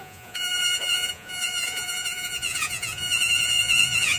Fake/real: fake